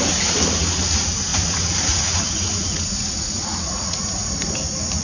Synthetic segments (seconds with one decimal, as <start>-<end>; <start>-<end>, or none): 1.3-4.3